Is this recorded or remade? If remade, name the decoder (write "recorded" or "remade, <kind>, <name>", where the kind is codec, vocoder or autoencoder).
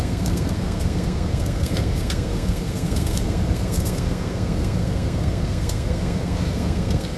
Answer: remade, codec, SNAC